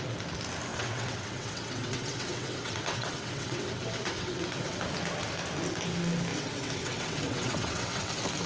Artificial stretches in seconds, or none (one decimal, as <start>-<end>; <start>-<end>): 0.7-4.8; 6.3-8.1